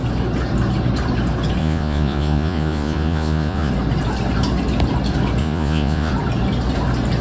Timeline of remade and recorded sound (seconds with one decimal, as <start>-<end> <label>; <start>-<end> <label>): 0.0-1.6 recorded; 1.6-3.7 remade; 3.7-5.4 recorded; 5.4-6.1 remade; 6.1-7.2 recorded